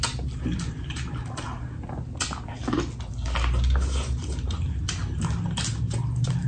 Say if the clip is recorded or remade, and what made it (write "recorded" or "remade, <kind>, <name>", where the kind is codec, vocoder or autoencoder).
recorded